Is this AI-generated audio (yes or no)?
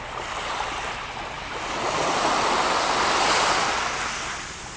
no